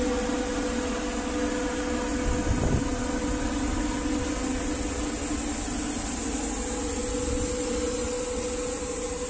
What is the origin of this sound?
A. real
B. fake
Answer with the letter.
A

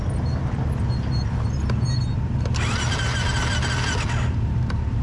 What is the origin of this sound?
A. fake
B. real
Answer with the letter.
B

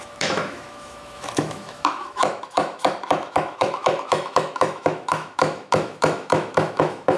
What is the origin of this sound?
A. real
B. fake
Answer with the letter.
B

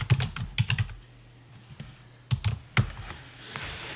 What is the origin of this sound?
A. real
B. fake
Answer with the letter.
A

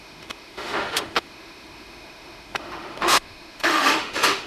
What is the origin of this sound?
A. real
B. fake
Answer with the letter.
B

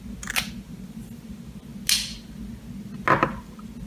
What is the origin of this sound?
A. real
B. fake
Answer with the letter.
A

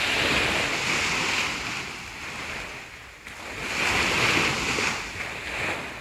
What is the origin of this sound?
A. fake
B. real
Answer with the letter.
B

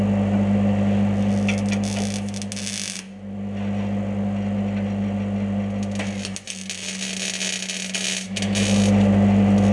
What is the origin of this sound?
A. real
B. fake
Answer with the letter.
A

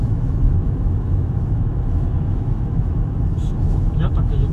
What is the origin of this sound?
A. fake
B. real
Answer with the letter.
A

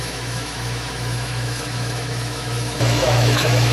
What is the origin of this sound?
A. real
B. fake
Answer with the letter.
B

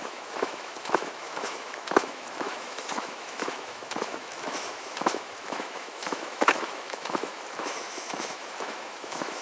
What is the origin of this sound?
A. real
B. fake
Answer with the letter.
B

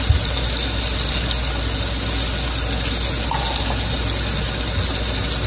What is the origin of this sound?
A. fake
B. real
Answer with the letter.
B